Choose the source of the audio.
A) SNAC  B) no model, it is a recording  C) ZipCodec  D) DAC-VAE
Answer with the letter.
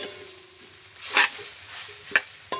B